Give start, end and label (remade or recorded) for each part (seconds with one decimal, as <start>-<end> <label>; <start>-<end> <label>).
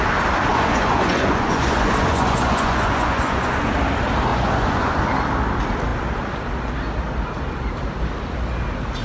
0.0-0.5 recorded; 0.5-3.7 remade; 3.7-4.3 recorded; 4.3-5.0 remade; 5.0-9.0 recorded